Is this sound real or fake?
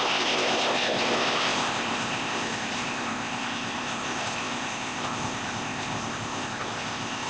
fake